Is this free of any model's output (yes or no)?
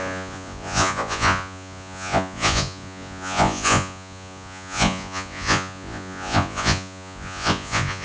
no